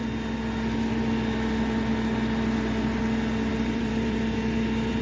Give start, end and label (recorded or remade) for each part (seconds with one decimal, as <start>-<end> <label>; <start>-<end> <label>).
0.0-3.5 recorded; 3.5-5.0 remade

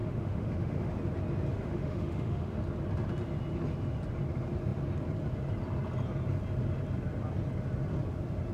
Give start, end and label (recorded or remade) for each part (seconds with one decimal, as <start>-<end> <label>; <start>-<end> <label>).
0.0-0.9 remade; 0.9-1.5 recorded; 1.5-2.6 remade; 2.6-8.5 recorded

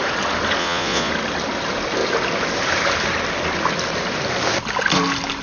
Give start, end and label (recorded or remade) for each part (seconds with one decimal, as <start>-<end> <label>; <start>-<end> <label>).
0.0-0.6 recorded; 0.6-1.1 remade; 1.1-5.4 recorded

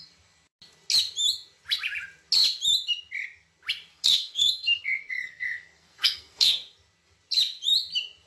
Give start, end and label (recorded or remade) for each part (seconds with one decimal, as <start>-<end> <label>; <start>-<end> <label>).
0.0-3.9 recorded; 3.9-6.5 remade; 6.5-8.3 recorded